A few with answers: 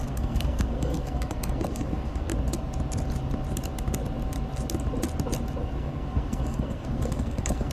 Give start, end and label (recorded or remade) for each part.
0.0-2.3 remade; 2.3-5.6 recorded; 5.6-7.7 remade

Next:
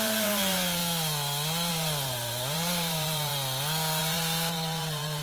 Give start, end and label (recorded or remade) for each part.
0.0-0.8 remade; 0.8-1.7 recorded; 1.7-3.3 remade; 3.3-4.0 recorded; 4.0-5.2 remade

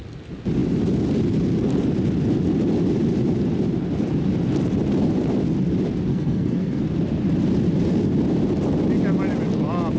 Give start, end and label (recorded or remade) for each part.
0.0-6.1 recorded; 6.1-6.8 remade; 6.8-10.0 recorded

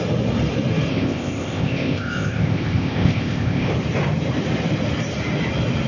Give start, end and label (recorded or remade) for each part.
0.0-0.9 recorded; 0.9-3.7 remade; 3.7-5.9 recorded

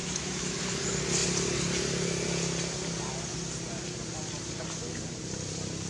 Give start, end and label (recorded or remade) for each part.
0.0-0.6 remade; 0.6-5.9 recorded